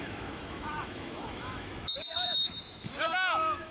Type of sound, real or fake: fake